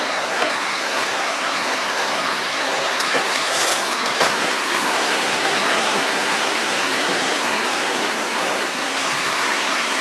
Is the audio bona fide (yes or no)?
no